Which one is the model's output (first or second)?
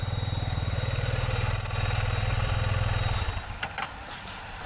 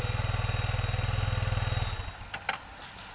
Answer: first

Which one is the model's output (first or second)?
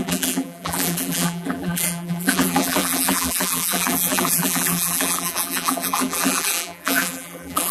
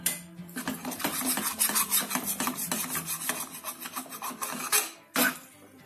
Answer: first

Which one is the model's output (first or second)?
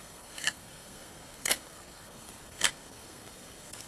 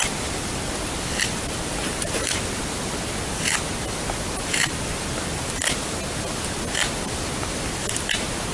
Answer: first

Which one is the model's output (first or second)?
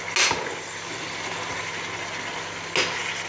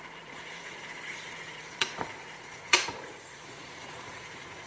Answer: second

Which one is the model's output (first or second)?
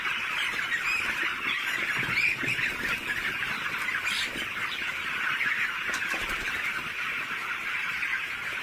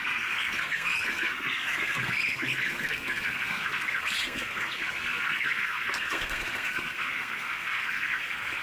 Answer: second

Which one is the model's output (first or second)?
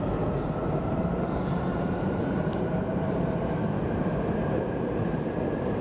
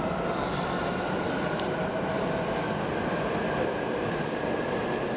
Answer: first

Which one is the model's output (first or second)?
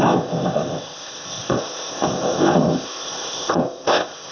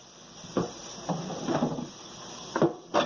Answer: first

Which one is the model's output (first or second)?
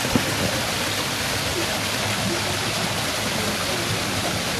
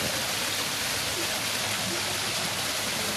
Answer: first